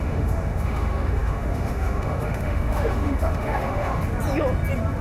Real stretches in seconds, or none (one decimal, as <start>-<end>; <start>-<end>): 4.0-5.0